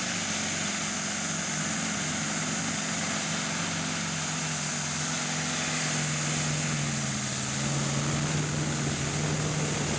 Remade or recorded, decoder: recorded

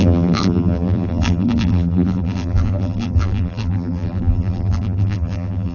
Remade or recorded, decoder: remade, vocoder, BigVGAN v2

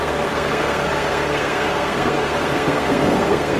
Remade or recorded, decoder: remade, codec, SNAC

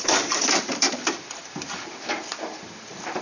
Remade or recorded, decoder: remade, vocoder, BigVGAN v2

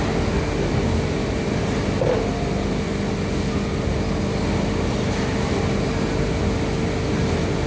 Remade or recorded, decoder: recorded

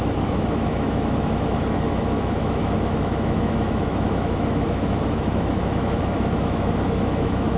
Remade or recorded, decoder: remade, autoencoder, DAC-VAE